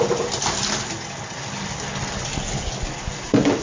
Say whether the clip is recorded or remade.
recorded